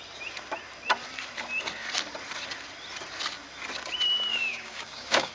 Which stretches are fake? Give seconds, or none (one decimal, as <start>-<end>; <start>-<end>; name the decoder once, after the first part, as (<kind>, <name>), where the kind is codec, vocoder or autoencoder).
4.3-5.3 (codec, DAC)